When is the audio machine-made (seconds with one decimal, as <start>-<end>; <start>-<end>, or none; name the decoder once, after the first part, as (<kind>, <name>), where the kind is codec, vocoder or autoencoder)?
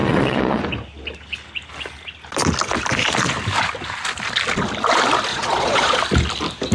0.0-0.6 (vocoder, Vocos); 5.3-6.0